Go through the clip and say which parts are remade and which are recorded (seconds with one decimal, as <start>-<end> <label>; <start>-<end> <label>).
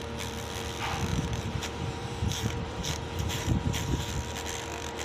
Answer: 0.0-1.1 recorded; 1.1-4.1 remade; 4.1-5.0 recorded